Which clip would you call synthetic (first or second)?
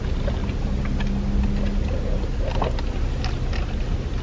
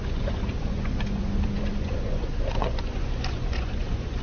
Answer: second